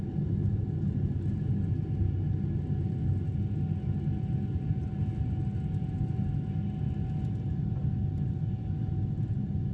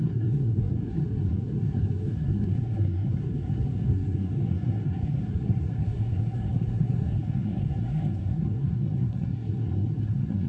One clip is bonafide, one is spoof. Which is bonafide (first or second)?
first